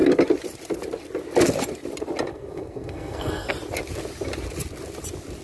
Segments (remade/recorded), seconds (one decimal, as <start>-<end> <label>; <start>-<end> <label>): 0.0-2.3 recorded; 2.3-3.5 remade; 3.5-5.4 recorded